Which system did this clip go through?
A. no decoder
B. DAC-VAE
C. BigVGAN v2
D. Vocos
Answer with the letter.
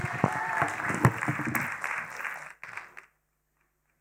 A